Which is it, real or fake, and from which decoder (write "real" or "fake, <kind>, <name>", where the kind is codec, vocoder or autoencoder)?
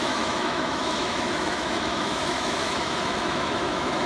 fake, autoencoder, DAC-VAE